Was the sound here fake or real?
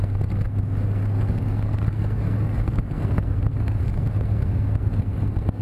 fake